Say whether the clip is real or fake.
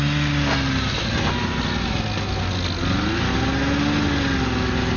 real